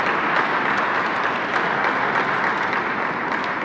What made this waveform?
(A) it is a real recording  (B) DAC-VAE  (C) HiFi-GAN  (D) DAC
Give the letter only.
A